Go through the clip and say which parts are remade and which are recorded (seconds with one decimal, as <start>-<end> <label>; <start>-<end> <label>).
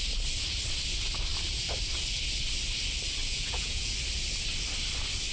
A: 0.0-3.2 recorded; 3.2-3.9 remade; 3.9-5.3 recorded